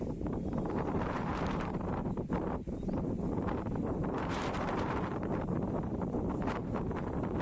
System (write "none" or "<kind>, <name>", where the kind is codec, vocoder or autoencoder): vocoder, BigVGAN v2